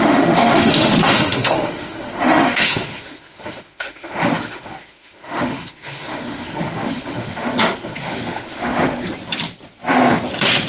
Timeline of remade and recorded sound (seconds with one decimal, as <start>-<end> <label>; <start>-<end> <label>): 0.0-9.1 remade; 9.1-10.7 recorded